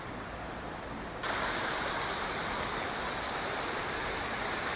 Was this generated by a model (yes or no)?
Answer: no